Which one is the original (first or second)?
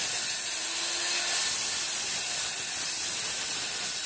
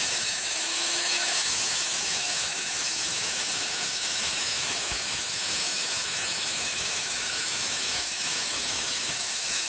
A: first